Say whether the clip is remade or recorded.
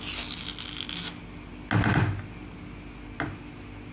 recorded